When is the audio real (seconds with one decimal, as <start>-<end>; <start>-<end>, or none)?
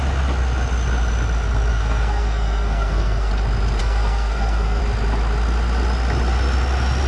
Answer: 0.0-1.7; 3.3-3.8; 4.8-7.1